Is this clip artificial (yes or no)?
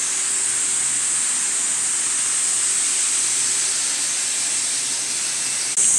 no